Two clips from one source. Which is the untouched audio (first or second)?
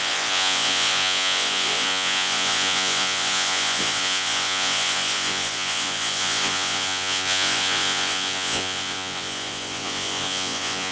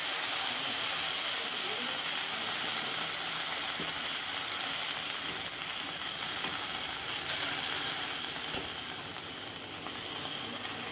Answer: second